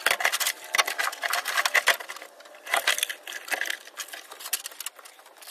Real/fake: real